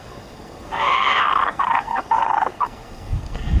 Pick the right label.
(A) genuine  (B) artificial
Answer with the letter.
B